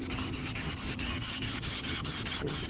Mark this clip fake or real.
fake